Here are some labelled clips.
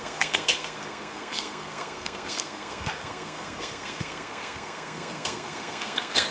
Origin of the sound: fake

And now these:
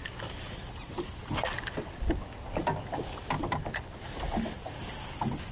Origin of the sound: real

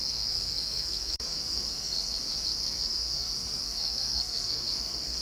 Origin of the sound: fake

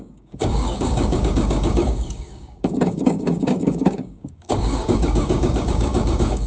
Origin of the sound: fake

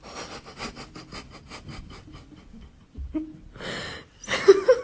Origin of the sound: real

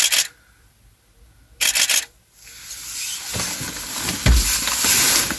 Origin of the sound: real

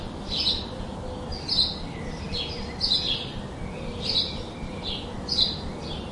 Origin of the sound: real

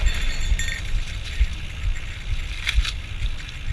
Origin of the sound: real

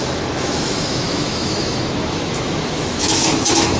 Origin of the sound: fake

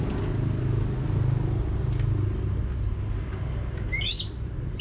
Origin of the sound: real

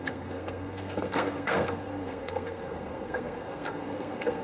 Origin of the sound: fake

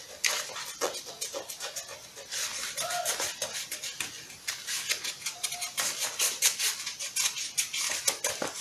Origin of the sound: real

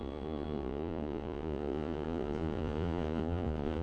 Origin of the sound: fake